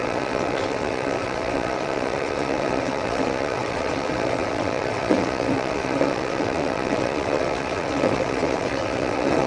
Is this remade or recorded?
remade